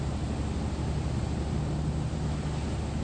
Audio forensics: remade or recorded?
recorded